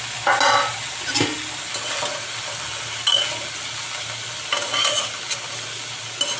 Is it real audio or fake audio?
real